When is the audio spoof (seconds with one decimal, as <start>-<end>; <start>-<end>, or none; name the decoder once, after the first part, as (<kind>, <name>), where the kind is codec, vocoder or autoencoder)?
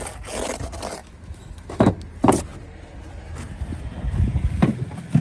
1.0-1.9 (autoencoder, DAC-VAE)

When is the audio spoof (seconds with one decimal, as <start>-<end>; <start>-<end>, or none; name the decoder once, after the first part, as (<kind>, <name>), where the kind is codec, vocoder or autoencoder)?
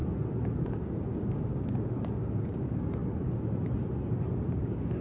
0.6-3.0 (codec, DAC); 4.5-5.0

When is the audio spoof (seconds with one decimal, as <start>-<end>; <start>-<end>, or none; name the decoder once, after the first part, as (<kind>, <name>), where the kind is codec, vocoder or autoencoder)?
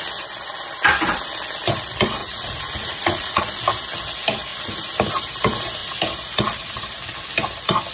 2.2-3.4 (vocoder, Vocos)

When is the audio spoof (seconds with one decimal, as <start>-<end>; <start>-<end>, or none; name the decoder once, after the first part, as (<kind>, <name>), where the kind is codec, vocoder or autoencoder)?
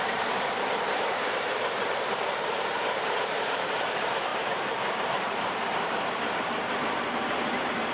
0.0-7.9 (vocoder, BigVGAN v2)